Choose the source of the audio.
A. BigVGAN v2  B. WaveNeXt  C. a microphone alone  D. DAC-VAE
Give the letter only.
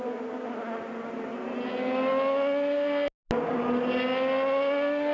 C